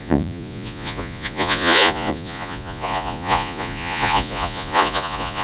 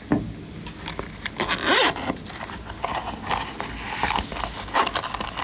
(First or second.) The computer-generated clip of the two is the first